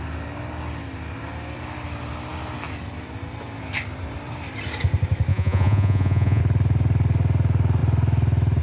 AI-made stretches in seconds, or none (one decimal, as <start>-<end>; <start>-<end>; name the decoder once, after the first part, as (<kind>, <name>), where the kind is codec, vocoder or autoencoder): 5.3-6.4 (vocoder, Vocos)